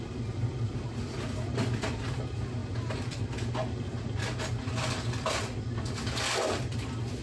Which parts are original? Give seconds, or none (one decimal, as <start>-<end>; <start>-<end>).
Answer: 0.0-7.2